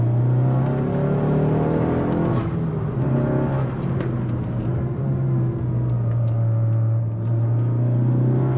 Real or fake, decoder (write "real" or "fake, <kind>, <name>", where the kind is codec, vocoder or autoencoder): real